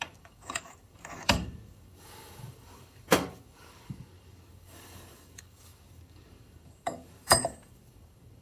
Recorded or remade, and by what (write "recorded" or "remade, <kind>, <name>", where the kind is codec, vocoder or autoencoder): remade, codec, DAC